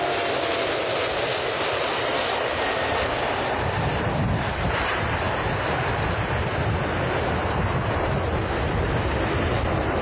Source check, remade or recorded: recorded